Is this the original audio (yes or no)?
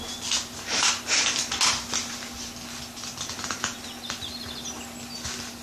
yes